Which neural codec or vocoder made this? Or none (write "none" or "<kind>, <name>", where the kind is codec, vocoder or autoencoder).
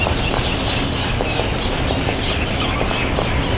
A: none